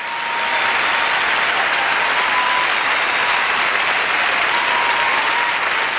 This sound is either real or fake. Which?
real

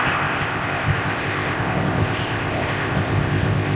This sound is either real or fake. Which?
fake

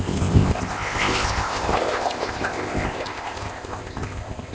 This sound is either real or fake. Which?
fake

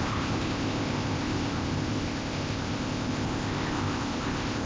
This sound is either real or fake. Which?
fake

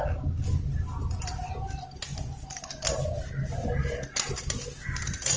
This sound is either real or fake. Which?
real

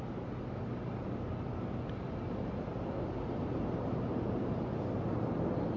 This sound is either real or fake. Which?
real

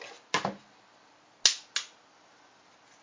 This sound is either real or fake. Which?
real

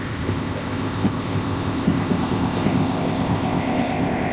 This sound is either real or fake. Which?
fake